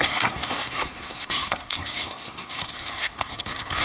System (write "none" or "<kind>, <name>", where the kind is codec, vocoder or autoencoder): codec, SNAC